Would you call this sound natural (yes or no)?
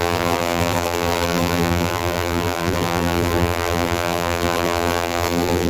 no